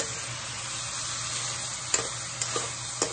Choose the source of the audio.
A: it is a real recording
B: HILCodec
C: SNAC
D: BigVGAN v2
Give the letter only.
A